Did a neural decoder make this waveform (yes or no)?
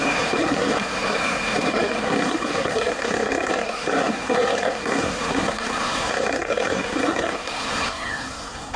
yes